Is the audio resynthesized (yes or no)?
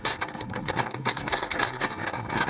yes